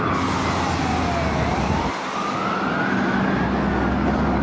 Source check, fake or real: real